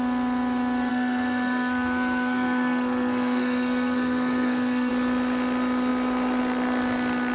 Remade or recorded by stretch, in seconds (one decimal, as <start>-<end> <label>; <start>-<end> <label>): 0.0-0.9 recorded; 0.9-4.9 remade; 4.9-7.3 recorded